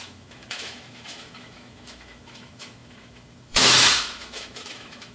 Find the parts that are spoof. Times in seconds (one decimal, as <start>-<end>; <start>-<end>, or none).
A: 0.0-5.1